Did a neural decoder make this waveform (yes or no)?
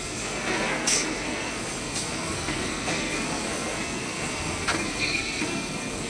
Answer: yes